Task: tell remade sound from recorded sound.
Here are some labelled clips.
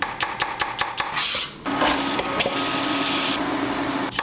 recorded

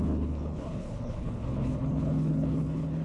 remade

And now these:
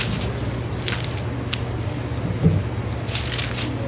recorded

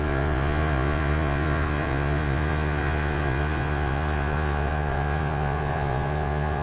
remade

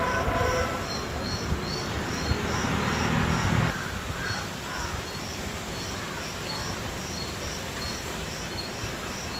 recorded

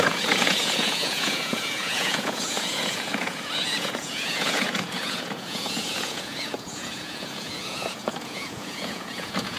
remade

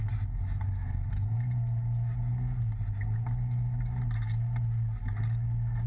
recorded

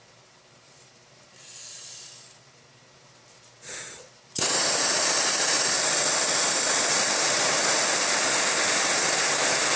recorded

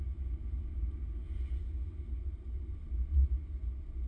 recorded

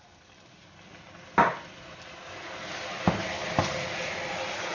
recorded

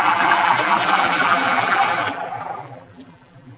remade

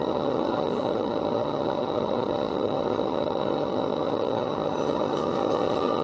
remade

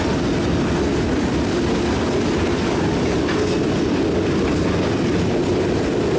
recorded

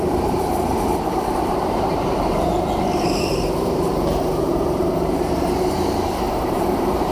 remade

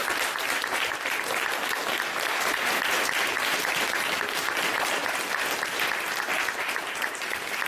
recorded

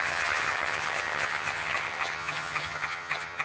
remade